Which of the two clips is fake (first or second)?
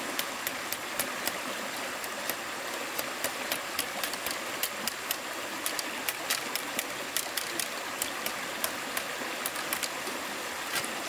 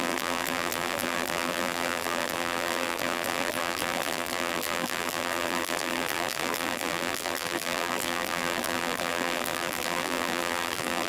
second